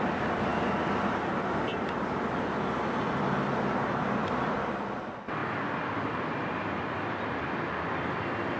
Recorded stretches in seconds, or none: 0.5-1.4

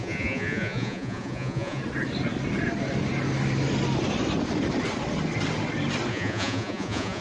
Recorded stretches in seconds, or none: 1.8-6.1